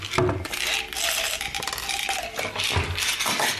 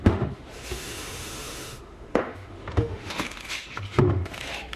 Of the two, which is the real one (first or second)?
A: first